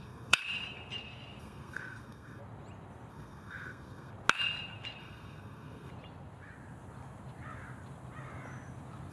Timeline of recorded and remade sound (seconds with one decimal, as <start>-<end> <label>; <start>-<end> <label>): 0.0-0.4 remade; 0.4-1.4 recorded; 1.4-2.4 remade; 2.4-3.1 recorded; 3.1-4.1 remade; 4.1-5.0 recorded; 5.0-5.9 remade; 5.9-9.1 recorded